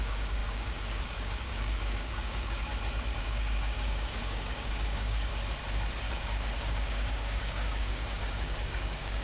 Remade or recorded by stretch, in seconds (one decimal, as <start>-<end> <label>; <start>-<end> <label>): 0.0-2.7 remade; 2.7-3.2 recorded; 3.2-5.3 remade; 5.3-6.1 recorded; 6.1-9.2 remade